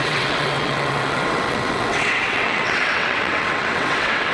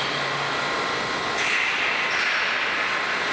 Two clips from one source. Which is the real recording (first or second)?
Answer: second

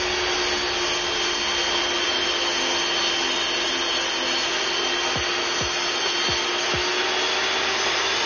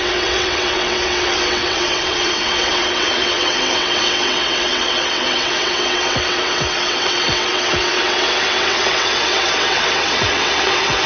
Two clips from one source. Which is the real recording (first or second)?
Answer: first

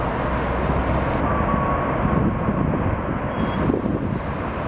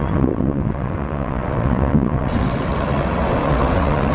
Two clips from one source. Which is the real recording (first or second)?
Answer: first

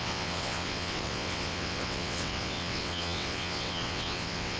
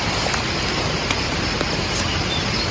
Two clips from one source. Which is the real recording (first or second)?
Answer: second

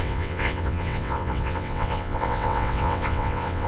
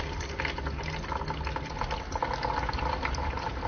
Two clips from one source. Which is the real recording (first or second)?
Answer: second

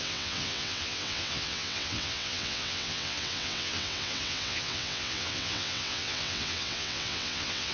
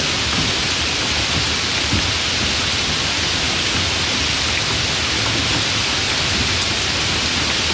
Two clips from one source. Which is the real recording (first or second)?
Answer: second